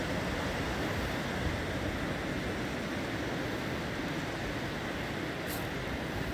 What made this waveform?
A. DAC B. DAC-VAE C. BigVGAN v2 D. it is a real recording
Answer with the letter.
D